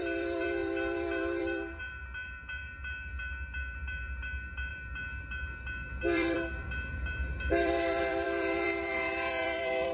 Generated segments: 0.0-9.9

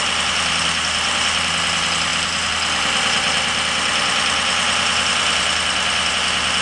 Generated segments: none

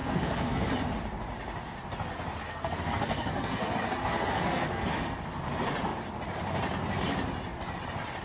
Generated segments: 0.0-0.7; 2.4-5.2

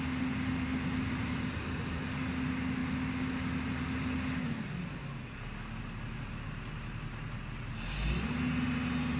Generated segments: none